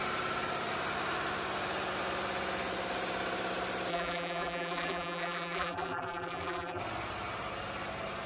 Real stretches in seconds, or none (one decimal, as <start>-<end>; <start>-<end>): 0.0-3.9; 6.8-8.3